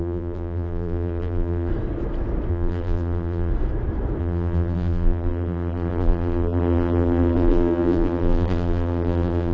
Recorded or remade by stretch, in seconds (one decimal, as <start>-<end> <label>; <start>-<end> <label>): 0.0-1.7 remade; 1.7-2.5 recorded; 2.5-3.5 remade; 3.5-4.2 recorded; 4.2-9.5 remade